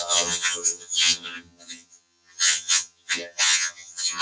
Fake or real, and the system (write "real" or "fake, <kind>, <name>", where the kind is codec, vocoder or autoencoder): fake, vocoder, HiFi-GAN